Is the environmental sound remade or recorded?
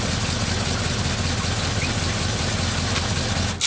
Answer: recorded